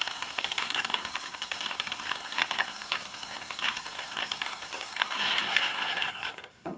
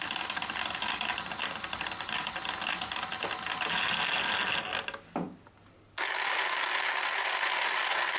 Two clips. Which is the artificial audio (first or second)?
first